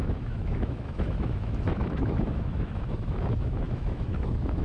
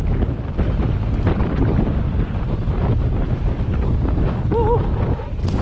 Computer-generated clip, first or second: first